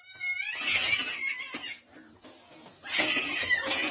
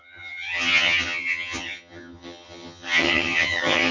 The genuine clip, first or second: first